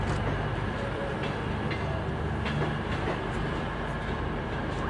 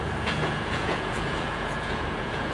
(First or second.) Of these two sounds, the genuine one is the first